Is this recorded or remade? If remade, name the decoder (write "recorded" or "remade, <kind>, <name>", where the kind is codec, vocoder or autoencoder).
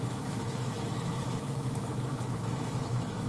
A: remade, autoencoder, DAC-VAE